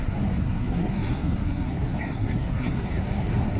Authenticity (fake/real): fake